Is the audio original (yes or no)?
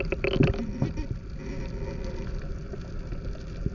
yes